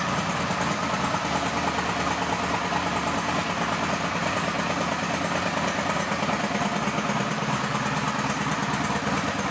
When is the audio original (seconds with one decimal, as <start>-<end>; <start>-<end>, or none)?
0.0-9.5